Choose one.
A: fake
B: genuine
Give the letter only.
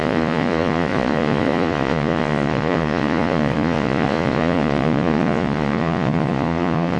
A